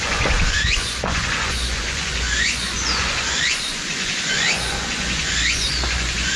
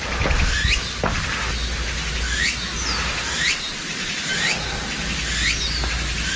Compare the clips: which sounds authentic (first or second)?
second